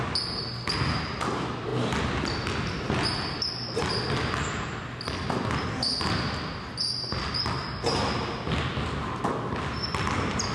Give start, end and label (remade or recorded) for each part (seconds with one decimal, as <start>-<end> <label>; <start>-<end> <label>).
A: 0.0-10.5 recorded